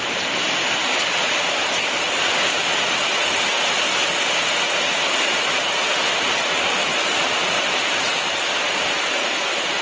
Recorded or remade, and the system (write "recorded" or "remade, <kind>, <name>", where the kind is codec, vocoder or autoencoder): recorded